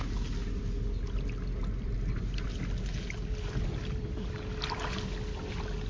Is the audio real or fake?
real